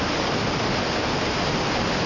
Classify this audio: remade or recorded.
recorded